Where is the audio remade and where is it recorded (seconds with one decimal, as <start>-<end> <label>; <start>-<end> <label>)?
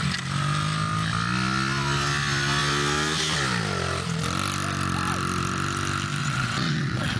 0.0-6.2 recorded; 6.2-7.2 remade